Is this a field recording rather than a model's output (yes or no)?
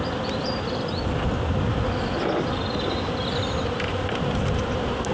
yes